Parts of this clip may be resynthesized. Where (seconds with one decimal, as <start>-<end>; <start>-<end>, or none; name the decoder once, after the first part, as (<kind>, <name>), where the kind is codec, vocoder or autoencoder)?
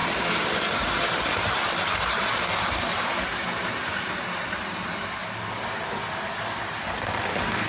none